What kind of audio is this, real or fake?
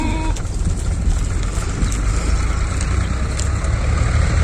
real